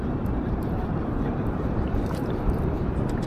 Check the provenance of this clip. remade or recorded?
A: remade